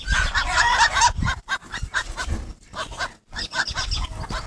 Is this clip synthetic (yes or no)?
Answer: no